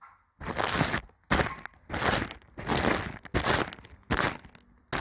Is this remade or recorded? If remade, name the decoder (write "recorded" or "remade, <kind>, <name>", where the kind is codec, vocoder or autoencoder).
recorded